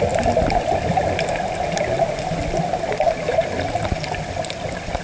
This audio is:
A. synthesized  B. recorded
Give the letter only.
B